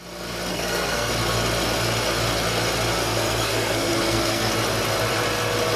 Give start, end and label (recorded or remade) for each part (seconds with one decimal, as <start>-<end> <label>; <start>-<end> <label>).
0.0-0.5 recorded; 0.5-1.1 remade; 1.1-3.0 recorded; 3.0-4.5 remade; 4.5-5.8 recorded